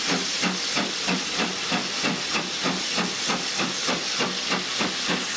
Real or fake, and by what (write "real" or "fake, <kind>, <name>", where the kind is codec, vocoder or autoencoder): real